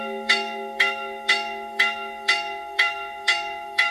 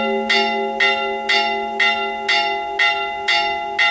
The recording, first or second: second